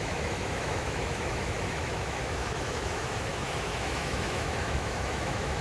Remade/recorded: remade